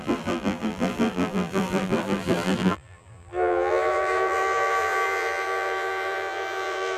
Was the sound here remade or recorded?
remade